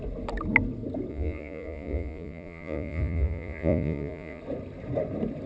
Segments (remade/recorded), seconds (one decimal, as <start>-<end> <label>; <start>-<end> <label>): 0.0-1.1 recorded; 1.1-4.4 remade; 4.4-5.5 recorded